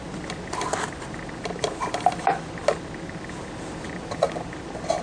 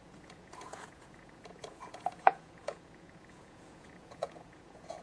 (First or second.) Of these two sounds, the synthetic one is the second